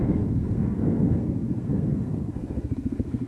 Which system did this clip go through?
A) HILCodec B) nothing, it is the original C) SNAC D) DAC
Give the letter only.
C